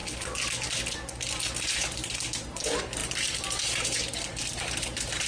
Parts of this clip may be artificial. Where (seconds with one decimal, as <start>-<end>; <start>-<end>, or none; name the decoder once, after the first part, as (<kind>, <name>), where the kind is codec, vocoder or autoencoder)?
1.6-5.3 (vocoder, BigVGAN v2)